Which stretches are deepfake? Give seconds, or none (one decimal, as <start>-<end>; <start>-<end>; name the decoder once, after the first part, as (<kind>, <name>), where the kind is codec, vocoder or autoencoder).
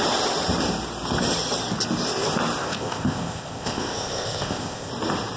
2.6-4.9 (codec, ZipCodec)